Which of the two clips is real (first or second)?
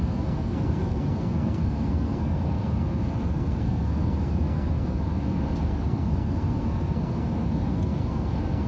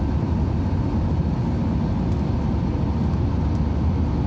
second